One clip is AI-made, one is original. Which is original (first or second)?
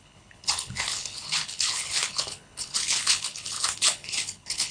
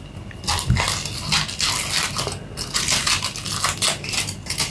second